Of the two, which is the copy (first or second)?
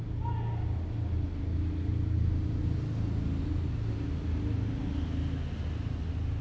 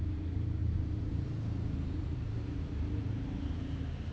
second